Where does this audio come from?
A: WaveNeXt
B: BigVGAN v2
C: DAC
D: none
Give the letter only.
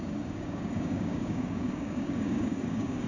C